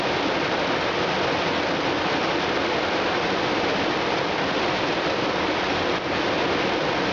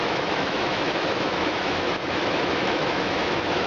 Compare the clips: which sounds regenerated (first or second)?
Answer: second